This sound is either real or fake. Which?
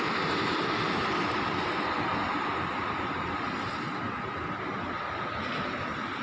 real